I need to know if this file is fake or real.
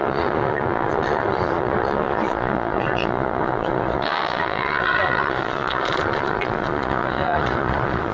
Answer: fake